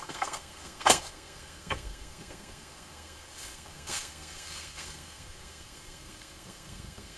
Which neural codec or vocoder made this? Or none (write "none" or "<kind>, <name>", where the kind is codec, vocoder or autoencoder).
codec, SNAC